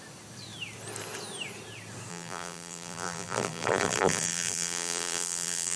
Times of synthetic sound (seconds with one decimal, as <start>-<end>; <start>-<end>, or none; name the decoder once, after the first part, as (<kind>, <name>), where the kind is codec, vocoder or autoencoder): 2.1-5.8 (vocoder, BigVGAN v2)